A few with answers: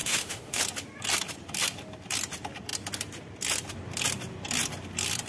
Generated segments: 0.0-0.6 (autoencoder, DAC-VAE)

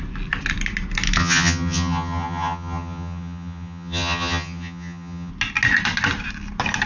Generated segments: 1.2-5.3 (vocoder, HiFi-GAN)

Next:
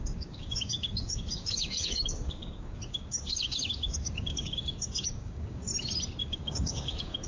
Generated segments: 0.0-5.7 (codec, DAC); 6.2-7.3

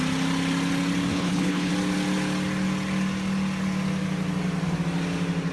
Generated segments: 1.1-1.7 (codec, HILCodec)

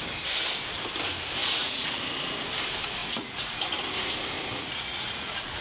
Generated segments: 1.4-2.0 (vocoder, Vocos); 3.0-3.6; 4.5-5.6

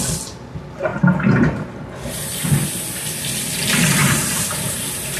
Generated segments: 4.0-4.6 (vocoder, BigVGAN v2)

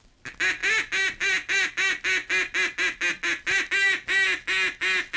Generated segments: none

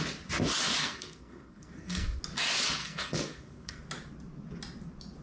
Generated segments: 0.8-2.2 (codec, SNAC); 2.8-3.8